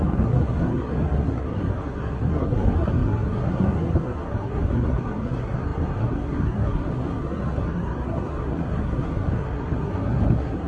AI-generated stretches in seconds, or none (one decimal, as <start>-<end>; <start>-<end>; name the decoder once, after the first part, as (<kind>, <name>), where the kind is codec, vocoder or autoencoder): 0.0-10.7 (codec, SNAC)